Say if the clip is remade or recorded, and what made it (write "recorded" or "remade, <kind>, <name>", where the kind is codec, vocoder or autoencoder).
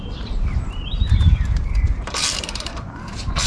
remade, vocoder, BigVGAN v2